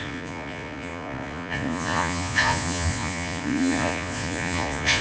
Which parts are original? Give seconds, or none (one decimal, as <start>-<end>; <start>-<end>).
none